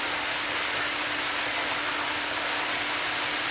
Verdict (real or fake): real